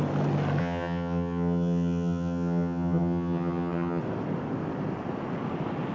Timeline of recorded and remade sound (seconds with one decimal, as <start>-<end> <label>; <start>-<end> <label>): 0.0-0.6 recorded; 0.6-4.0 remade; 4.0-5.9 recorded